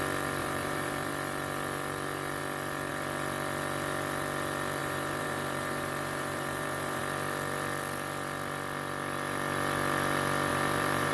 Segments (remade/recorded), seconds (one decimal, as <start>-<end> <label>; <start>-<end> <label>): 0.0-0.4 recorded; 0.4-1.1 remade; 1.1-4.8 recorded; 4.8-7.0 remade; 7.0-10.5 recorded; 10.5-11.1 remade